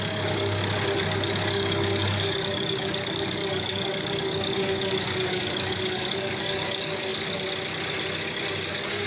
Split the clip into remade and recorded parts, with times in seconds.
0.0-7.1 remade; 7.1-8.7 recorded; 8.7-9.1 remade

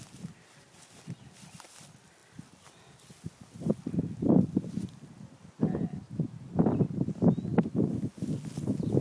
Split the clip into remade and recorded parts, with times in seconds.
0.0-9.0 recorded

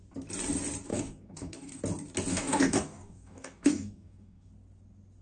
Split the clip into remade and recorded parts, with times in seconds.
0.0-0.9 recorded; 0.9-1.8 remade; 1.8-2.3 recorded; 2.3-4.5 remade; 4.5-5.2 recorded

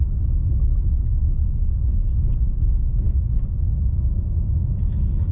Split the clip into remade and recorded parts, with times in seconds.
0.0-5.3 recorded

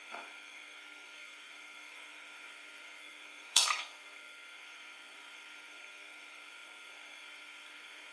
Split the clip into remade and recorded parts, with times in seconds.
0.0-8.1 remade

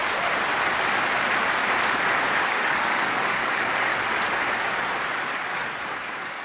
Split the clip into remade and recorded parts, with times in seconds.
0.0-2.4 recorded; 2.4-3.9 remade; 3.9-5.1 recorded; 5.1-6.4 remade

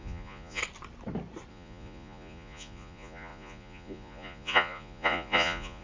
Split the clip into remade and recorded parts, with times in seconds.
0.0-0.6 remade; 0.6-1.5 recorded; 1.5-5.8 remade